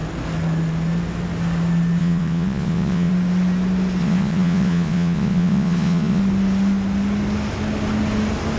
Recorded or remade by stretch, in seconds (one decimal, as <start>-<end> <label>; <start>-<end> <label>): 0.0-2.0 recorded; 2.0-3.1 remade; 3.1-4.0 recorded; 4.0-6.2 remade; 6.2-8.6 recorded